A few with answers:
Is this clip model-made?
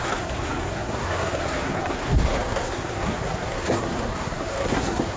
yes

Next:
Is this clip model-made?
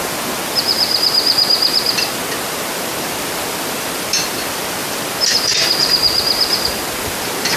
no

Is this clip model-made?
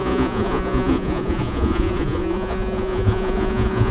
yes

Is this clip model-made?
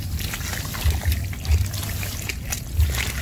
no